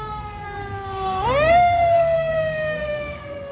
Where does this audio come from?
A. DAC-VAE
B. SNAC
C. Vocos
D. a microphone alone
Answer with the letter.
B